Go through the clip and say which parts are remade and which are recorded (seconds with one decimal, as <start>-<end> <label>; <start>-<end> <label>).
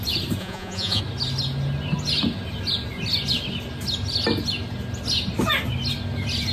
0.0-0.4 recorded; 0.4-1.0 remade; 1.0-6.5 recorded